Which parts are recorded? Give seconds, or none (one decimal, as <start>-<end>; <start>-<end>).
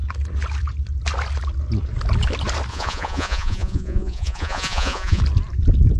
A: 0.0-2.7; 5.2-6.0